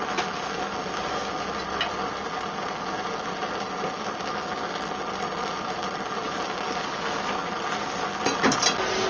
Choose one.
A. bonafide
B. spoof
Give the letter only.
A